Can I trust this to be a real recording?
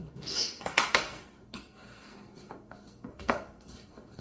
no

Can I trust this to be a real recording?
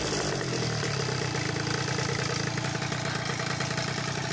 yes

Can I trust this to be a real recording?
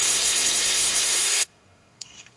no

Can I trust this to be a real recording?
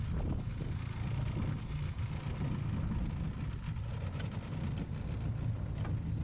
yes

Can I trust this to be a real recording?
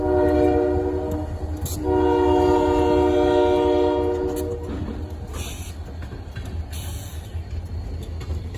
yes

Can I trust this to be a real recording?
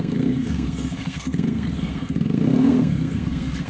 no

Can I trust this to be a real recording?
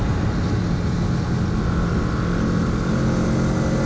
yes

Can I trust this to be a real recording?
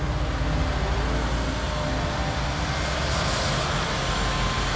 yes